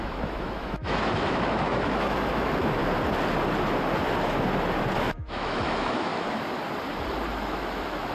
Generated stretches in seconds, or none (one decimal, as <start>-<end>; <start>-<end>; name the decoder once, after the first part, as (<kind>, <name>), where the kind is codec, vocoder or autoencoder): 0.0-2.8 (autoencoder, DAC-VAE); 5.1-6.1; 7.3-8.1